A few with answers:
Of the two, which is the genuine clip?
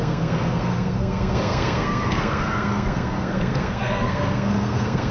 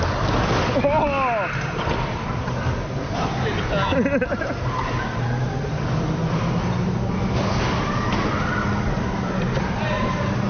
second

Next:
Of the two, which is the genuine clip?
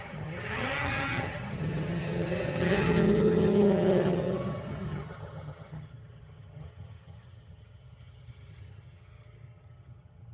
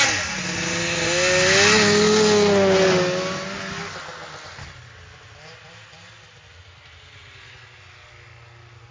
second